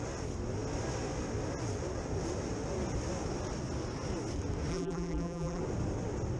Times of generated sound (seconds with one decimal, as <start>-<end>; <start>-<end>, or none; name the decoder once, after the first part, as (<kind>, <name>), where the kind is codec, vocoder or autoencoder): 4.7-5.6 (vocoder, BigVGAN v2)